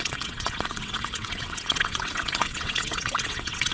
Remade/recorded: remade